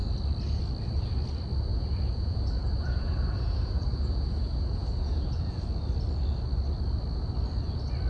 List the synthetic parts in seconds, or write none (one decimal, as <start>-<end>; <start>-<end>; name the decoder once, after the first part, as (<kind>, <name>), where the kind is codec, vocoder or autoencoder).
1.7-5.6 (vocoder, Vocos)